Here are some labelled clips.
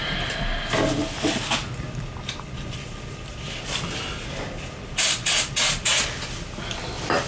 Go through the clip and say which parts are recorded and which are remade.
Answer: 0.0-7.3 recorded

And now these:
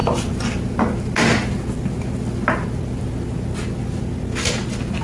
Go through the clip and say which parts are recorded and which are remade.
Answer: 0.0-5.0 recorded

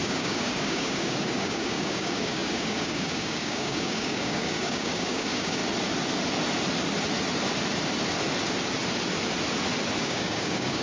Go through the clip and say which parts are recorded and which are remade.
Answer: 0.0-5.6 remade; 5.6-10.0 recorded; 10.0-10.8 remade

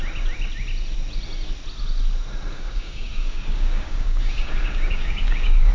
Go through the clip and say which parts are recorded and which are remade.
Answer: 0.0-2.5 recorded; 2.5-5.7 remade

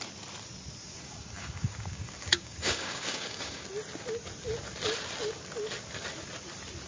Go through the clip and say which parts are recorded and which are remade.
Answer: 0.0-0.8 recorded; 0.8-3.7 remade; 3.7-6.9 recorded